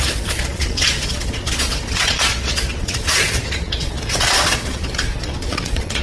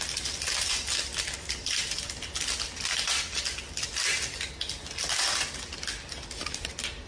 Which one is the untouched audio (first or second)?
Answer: second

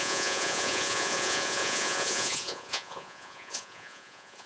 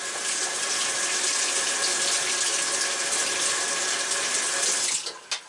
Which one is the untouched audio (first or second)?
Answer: second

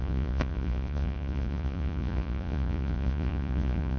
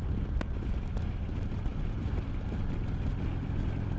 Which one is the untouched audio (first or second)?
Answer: second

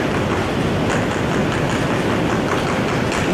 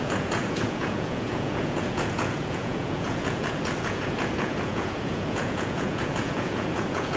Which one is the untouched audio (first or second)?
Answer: first